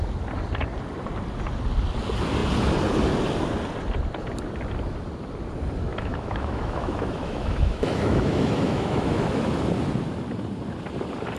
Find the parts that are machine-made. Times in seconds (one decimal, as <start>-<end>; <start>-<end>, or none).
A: 5.9-9.6